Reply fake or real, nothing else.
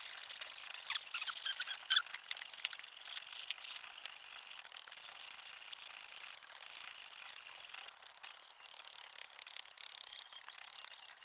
real